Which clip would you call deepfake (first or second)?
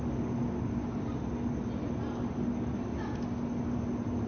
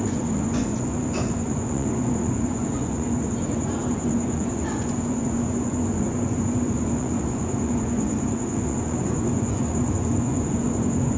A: second